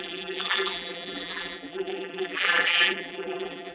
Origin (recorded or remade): remade